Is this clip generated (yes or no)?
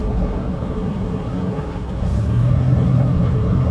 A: yes